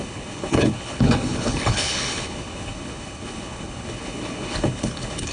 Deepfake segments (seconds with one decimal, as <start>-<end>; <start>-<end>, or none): 0.0-5.3